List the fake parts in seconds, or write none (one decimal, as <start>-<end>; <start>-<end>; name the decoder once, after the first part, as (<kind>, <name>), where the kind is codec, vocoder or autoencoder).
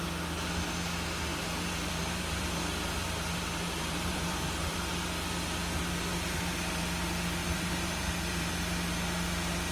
1.3-4.9 (vocoder, BigVGAN v2); 6.1-6.8; 7.4-8.5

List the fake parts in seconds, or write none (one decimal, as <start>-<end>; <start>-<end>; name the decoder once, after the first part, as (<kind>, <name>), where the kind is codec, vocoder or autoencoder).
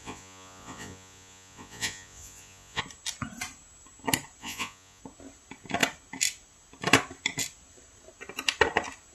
0.0-2.8 (vocoder, Vocos); 4.4-5.0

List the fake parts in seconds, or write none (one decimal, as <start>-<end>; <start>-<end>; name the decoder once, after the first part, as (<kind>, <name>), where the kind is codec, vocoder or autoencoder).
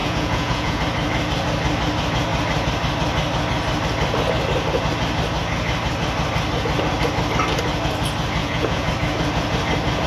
0.0-0.8 (vocoder, Vocos); 8.4-8.9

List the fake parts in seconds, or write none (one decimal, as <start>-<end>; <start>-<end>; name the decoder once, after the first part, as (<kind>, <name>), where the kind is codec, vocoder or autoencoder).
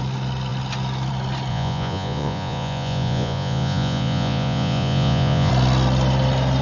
1.5-5.5 (vocoder, Vocos)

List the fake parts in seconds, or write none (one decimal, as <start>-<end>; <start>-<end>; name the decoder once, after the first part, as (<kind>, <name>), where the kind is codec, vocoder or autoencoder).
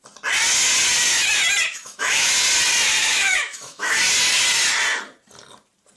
1.7-2.3 (autoencoder, DAC-VAE); 3.0-4.0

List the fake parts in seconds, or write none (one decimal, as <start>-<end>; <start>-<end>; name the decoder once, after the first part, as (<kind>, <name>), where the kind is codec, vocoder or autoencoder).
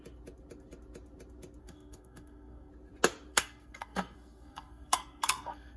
1.6-2.7 (codec, SNAC); 3.3-5.8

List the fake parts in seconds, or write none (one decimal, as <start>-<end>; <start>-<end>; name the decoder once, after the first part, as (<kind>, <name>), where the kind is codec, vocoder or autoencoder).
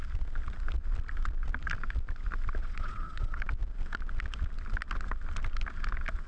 2.6-3.4 (vocoder, WaveNeXt)